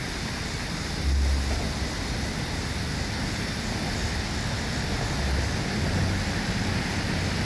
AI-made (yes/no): no